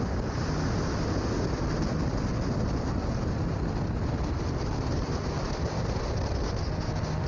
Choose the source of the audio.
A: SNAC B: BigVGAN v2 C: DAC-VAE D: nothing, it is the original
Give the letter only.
D